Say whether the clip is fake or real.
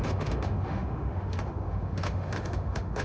fake